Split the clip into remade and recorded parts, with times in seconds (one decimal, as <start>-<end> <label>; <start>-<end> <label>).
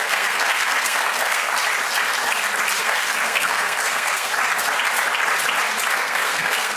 0.0-1.5 remade; 1.5-2.8 recorded; 2.8-4.3 remade; 4.3-6.0 recorded; 6.0-6.8 remade